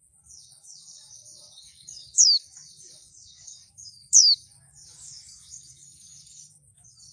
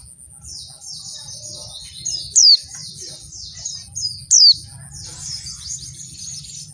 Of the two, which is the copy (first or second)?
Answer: first